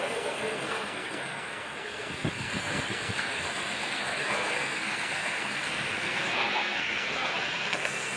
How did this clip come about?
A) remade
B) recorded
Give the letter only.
A